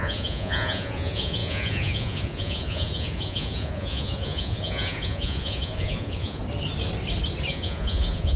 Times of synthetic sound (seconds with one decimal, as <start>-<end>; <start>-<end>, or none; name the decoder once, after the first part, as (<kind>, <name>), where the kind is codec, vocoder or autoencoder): 0.0-6.4 (vocoder, Vocos); 7.5-8.4